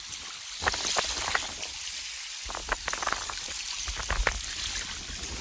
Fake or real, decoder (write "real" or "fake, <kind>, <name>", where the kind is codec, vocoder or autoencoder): real